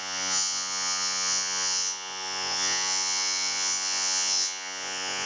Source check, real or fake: fake